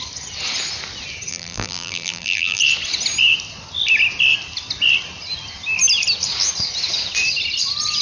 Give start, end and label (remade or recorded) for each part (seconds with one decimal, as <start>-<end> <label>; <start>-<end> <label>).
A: 0.0-1.3 recorded; 1.3-2.6 remade; 2.6-8.0 recorded